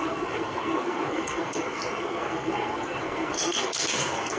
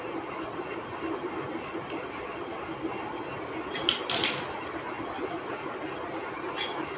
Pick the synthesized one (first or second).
first